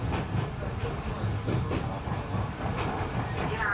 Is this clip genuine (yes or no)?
yes